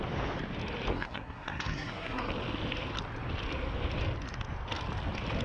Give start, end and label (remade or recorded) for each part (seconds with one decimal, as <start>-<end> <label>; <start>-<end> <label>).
0.0-0.9 recorded; 0.9-2.3 remade; 2.3-5.4 recorded

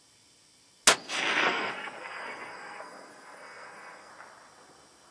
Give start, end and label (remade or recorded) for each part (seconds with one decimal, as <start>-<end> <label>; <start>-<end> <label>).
0.0-1.0 recorded; 1.0-4.1 remade; 4.1-5.1 recorded

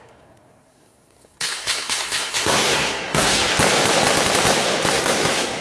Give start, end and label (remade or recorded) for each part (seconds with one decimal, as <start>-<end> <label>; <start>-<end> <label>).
0.0-3.5 remade; 3.5-4.9 recorded; 4.9-5.6 remade